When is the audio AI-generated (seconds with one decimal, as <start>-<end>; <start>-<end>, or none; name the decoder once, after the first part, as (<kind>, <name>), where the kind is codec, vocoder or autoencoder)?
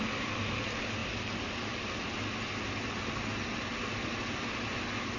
none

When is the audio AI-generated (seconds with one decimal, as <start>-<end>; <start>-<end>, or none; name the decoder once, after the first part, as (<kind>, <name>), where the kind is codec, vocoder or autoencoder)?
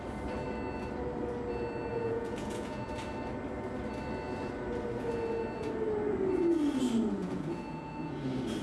1.9-2.9 (vocoder, Vocos); 7.2-8.1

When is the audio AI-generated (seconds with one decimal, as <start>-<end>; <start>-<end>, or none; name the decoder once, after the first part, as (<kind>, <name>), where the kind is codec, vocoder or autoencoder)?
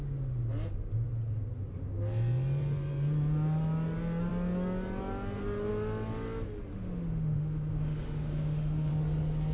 6.7-8.9 (autoencoder, DAC-VAE)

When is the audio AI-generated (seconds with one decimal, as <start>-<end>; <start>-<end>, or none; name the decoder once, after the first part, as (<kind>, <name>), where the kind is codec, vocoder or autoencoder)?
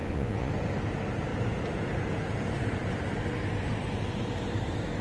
0.0-0.5 (vocoder, Vocos)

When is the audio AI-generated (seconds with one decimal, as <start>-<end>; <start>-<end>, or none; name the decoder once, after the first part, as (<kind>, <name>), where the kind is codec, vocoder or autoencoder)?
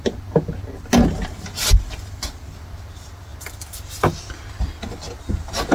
none